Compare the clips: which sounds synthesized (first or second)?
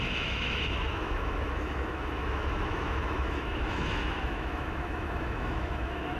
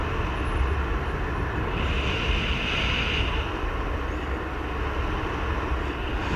first